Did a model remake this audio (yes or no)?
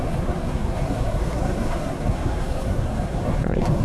yes